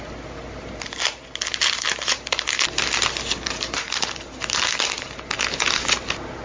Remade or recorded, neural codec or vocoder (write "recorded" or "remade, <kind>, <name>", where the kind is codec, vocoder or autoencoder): recorded